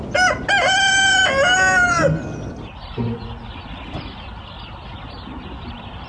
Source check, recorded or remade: recorded